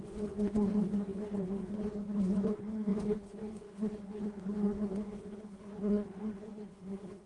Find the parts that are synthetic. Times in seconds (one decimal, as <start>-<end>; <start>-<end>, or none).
0.0-7.3